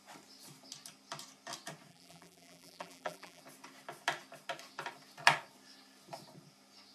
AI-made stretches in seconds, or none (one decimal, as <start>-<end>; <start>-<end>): 1.9-3.4